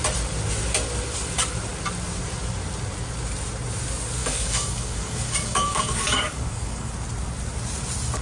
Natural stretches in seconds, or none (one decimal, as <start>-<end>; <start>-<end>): 0.0-4.2; 6.9-8.2